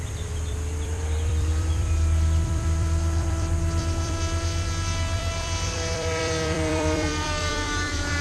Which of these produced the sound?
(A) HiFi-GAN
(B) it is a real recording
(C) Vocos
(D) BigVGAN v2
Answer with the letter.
D